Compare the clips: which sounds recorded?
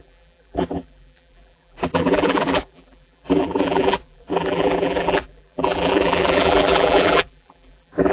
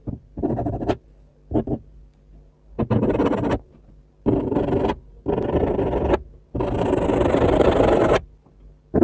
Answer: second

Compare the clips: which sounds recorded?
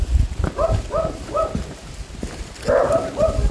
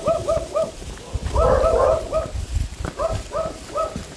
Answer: first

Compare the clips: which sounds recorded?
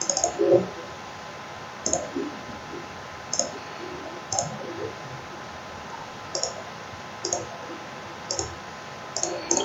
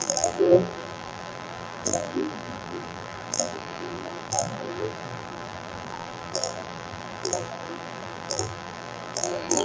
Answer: first